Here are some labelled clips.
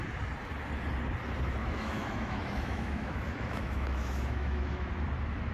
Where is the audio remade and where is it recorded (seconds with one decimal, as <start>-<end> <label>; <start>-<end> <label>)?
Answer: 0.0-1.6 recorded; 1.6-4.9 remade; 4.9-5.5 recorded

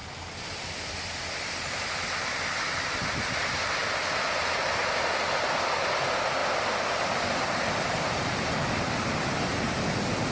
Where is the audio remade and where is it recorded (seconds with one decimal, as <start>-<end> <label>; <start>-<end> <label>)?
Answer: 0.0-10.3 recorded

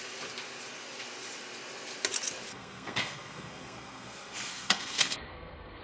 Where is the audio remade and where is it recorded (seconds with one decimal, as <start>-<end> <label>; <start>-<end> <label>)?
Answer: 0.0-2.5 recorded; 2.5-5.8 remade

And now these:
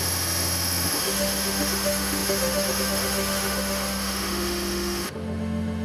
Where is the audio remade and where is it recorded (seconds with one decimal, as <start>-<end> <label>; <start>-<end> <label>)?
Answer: 0.0-5.8 remade

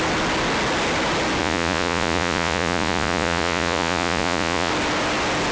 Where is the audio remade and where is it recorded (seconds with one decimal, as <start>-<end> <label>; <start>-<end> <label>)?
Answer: 0.0-1.4 recorded; 1.4-4.7 remade; 4.7-5.5 recorded

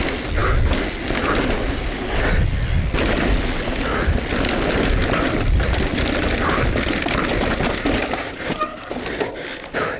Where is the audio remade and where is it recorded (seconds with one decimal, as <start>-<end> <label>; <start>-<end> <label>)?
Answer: 0.0-10.0 recorded

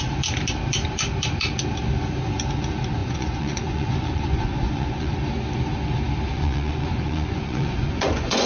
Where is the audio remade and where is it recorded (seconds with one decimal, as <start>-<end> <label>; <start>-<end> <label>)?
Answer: 0.0-3.0 recorded; 3.0-5.1 remade; 5.1-6.3 recorded; 6.3-8.5 remade